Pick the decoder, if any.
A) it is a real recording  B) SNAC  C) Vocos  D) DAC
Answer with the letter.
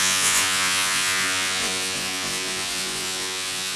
C